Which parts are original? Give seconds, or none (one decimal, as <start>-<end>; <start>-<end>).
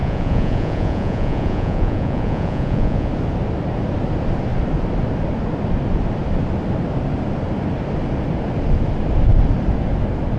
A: 3.1-10.4